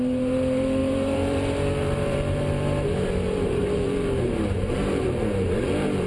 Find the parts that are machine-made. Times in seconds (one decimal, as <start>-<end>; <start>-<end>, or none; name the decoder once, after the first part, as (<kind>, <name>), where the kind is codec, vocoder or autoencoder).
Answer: 0.0-6.1 (vocoder, BigVGAN v2)